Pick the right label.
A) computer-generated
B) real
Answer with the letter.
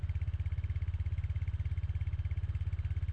B